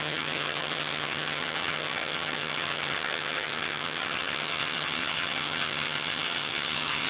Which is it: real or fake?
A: fake